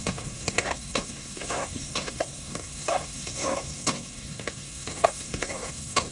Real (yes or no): no